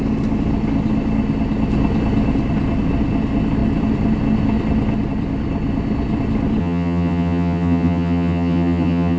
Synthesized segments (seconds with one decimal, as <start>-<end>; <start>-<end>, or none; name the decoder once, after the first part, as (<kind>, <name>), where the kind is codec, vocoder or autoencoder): 6.6-9.2 (vocoder, HiFi-GAN)